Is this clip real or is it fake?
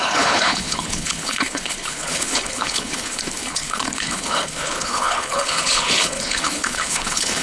fake